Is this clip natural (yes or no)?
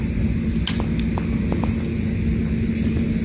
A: yes